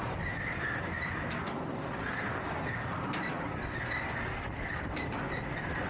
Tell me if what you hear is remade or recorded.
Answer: recorded